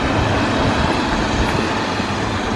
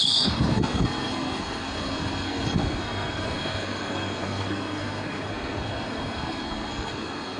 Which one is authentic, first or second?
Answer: first